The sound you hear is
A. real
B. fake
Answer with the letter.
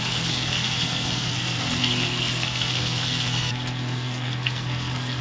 B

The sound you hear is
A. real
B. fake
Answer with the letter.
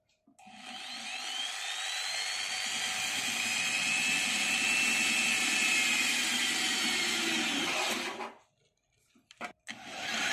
A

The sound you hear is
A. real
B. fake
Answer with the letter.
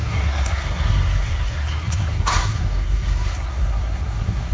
B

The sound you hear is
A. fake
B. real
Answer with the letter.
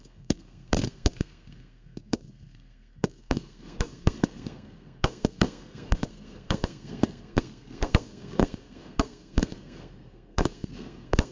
A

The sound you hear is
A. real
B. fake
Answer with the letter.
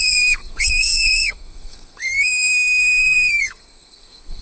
B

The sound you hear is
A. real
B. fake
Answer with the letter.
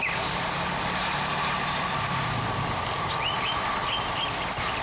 A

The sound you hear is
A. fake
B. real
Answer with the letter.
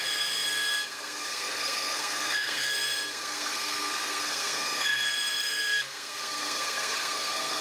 A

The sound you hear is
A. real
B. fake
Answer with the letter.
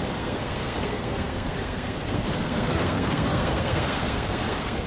B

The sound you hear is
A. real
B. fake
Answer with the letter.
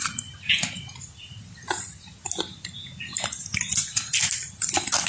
A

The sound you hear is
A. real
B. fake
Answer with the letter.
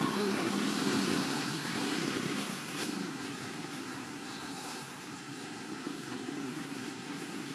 B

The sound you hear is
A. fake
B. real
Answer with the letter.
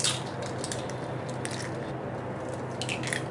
B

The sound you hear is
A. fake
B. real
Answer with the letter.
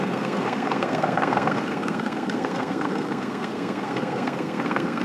A